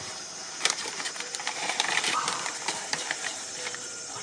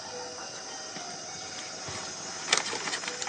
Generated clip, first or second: first